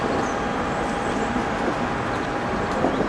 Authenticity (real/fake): real